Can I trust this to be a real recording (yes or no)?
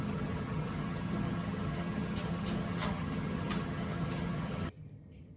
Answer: no